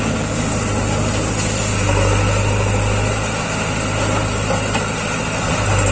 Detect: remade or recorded recorded